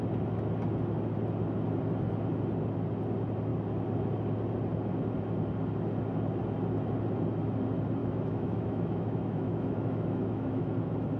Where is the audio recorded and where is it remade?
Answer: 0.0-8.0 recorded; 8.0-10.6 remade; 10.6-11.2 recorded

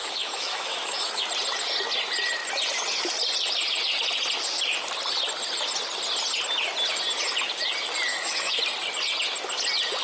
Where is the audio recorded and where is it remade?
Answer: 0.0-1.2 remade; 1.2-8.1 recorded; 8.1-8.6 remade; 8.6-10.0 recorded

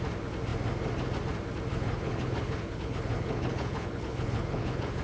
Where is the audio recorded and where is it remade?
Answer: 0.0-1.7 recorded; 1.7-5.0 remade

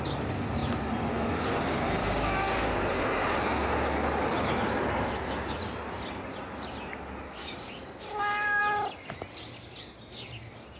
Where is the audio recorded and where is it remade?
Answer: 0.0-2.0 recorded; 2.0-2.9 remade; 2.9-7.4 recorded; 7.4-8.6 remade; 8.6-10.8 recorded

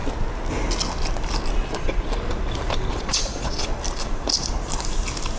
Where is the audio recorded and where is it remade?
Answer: 0.0-1.7 recorded; 1.7-2.1 remade; 2.1-2.9 recorded; 2.9-3.7 remade; 3.7-5.4 recorded

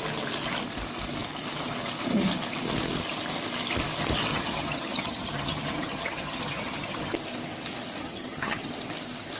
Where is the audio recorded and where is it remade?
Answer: 0.0-4.3 recorded; 4.3-7.1 remade; 7.1-8.0 recorded; 8.0-8.7 remade; 8.7-9.4 recorded